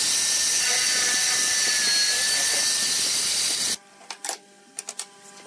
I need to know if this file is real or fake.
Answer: real